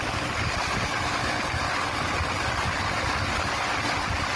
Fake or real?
fake